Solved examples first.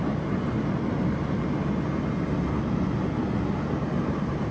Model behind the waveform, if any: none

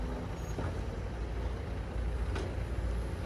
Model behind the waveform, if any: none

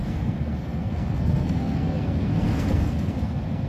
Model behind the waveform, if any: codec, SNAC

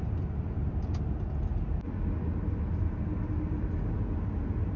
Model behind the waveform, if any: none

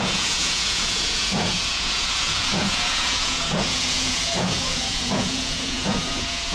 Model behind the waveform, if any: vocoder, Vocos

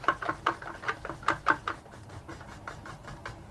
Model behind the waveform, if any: none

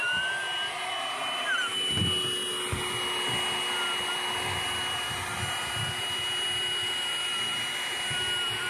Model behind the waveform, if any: none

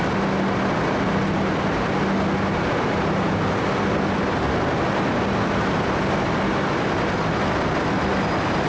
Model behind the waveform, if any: none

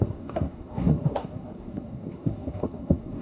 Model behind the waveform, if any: codec, SNAC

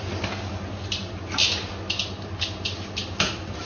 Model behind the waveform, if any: none